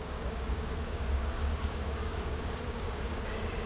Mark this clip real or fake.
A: fake